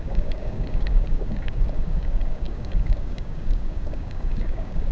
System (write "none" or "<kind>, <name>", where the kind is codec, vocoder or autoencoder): codec, DAC